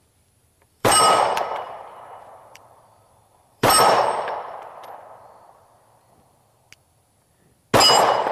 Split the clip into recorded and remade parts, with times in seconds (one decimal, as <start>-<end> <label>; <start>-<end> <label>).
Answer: 0.0-0.4 recorded; 0.4-4.0 remade; 4.0-8.3 recorded